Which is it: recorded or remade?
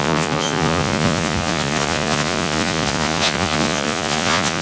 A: remade